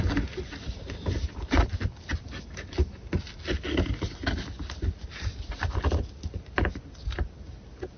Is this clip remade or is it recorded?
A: recorded